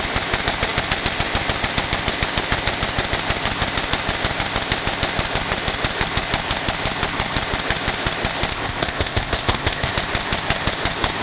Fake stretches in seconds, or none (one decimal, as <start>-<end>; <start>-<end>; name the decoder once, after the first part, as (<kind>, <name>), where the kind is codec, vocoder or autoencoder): 8.5-9.9 (codec, ZipCodec)